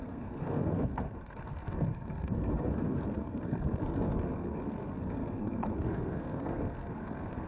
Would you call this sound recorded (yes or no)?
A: no